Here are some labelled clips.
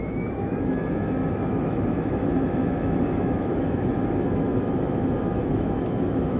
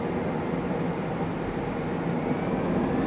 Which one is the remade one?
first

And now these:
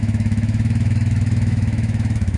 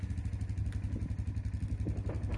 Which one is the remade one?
first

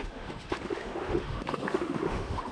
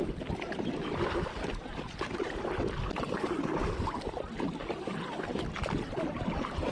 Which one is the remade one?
first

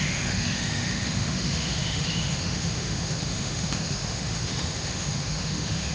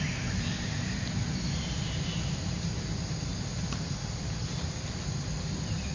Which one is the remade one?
first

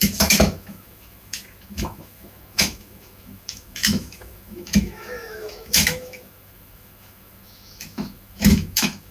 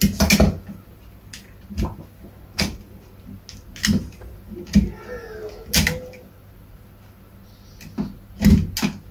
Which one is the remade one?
first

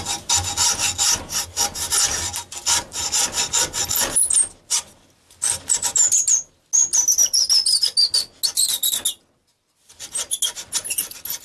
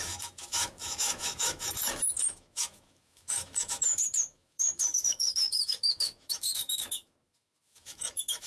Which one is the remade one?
second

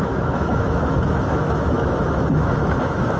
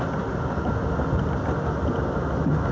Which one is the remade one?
first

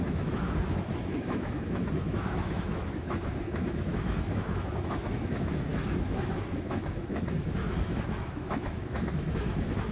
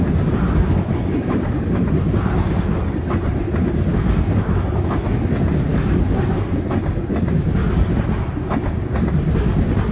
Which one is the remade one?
first